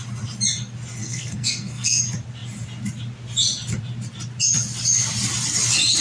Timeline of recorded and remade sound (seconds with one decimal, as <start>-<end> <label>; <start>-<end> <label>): 0.0-1.0 recorded; 1.0-2.0 remade; 2.0-6.0 recorded